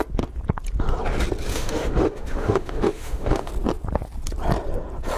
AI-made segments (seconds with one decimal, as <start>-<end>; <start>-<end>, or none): 1.5-3.5